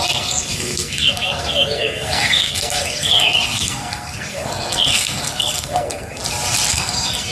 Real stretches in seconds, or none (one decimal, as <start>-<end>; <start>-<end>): 6.2-6.7